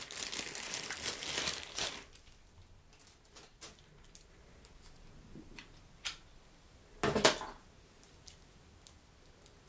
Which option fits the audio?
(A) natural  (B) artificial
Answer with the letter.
A